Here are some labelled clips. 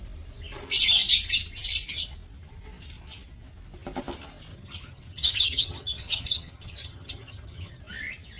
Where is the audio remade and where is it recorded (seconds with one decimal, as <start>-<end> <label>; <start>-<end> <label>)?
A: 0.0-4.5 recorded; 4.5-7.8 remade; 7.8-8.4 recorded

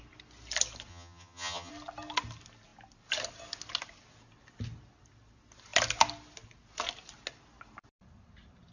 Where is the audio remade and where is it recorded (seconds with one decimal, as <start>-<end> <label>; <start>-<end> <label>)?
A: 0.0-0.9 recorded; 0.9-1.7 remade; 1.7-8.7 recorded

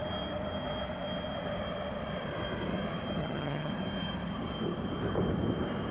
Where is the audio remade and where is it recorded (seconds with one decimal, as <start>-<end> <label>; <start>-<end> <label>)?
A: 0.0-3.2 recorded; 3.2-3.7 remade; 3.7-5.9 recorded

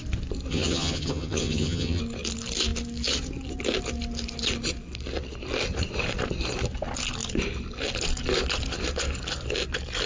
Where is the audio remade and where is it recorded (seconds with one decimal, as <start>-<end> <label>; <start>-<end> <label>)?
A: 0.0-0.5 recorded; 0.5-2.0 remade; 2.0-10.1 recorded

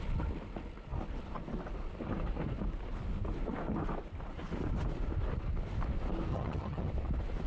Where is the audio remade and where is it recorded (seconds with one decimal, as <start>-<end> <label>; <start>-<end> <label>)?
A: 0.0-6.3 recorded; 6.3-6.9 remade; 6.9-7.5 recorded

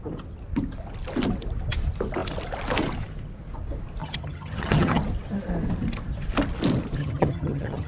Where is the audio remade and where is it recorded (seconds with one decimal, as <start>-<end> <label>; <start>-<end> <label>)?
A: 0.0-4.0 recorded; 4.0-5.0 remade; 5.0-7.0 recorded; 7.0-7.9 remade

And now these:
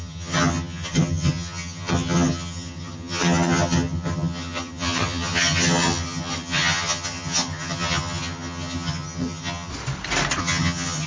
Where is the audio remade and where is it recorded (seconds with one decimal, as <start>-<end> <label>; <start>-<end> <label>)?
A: 0.0-9.7 remade; 9.7-10.4 recorded; 10.4-11.1 remade

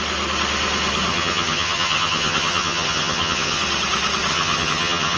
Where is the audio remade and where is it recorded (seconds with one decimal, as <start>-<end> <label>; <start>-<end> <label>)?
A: 0.0-1.1 recorded; 1.1-3.6 remade; 3.6-4.3 recorded; 4.3-5.2 remade